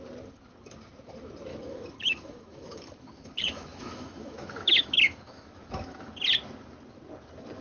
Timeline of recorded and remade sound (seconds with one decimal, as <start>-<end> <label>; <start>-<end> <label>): 0.0-1.5 recorded; 1.5-6.1 remade; 6.1-7.6 recorded